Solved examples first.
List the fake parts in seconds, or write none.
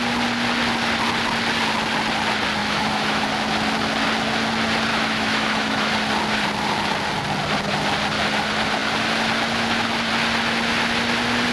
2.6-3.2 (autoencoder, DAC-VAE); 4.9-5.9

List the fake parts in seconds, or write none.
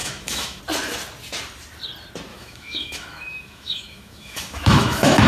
0.0-0.6 (autoencoder, DAC-VAE); 2.3-5.3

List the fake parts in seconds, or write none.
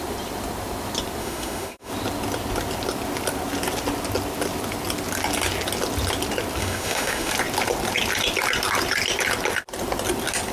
1.2-1.9 (autoencoder, DAC-VAE); 6.6-7.3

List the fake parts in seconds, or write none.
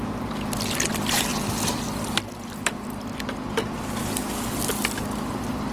none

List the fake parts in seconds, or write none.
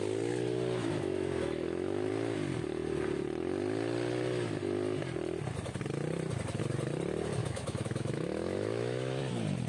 0.8-2.1 (autoencoder, DAC-VAE); 7.4-9.2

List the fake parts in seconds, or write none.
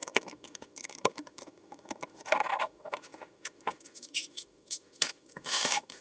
0.0-6.0 (autoencoder, DAC-VAE)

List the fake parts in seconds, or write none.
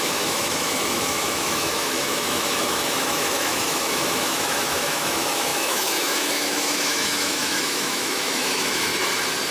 0.0-8.9 (autoencoder, DAC-VAE)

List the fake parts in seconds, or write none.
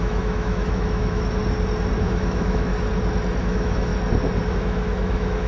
0.0-1.4 (autoencoder, DAC-VAE); 2.0-2.7; 3.4-3.9; 4.5-5.5